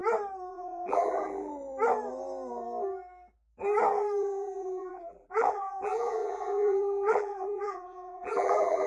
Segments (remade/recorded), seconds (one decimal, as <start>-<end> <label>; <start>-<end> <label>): 0.0-0.5 recorded; 0.5-1.5 remade; 1.5-4.2 recorded; 4.2-8.9 remade